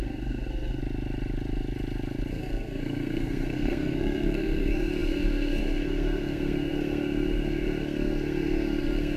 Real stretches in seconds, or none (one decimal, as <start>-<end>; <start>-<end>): 0.8-2.3